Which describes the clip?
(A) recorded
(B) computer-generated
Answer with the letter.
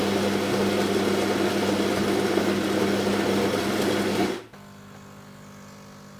A